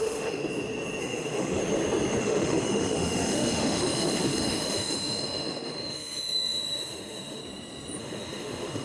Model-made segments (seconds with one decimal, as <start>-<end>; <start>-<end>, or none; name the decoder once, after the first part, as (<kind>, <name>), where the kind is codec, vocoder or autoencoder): 0.0-0.4 (autoencoder, DAC-VAE); 1.0-1.6; 2.2-7.4; 8.0-8.8